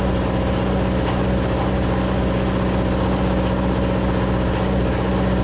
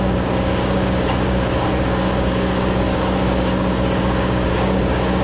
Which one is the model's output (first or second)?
second